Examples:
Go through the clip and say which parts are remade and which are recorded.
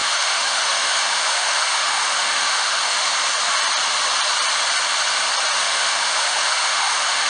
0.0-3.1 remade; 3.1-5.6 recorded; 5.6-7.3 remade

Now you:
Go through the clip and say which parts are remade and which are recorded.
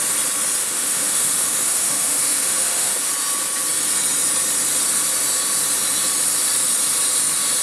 0.0-0.6 recorded; 0.6-3.1 remade; 3.1-7.6 recorded